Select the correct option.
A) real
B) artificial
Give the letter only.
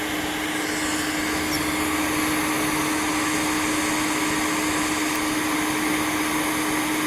A